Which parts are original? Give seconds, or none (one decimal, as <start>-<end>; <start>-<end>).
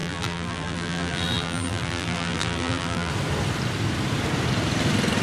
3.1-5.2